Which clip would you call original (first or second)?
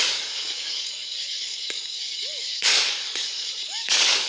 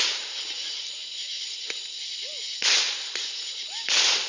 second